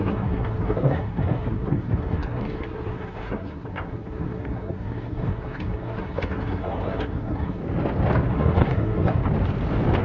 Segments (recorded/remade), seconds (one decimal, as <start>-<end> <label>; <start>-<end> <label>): 0.0-7.6 remade; 7.6-8.3 recorded; 8.3-9.2 remade; 9.2-10.0 recorded

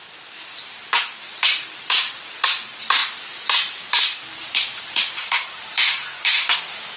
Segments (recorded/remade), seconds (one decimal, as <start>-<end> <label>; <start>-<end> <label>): 0.0-3.0 recorded; 3.0-5.6 remade; 5.6-7.0 recorded

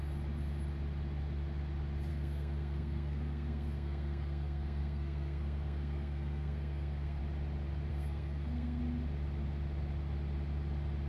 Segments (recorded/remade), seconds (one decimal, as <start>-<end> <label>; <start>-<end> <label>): 0.0-2.1 recorded; 2.1-7.2 remade; 7.2-7.9 recorded; 7.9-8.8 remade; 8.8-11.1 recorded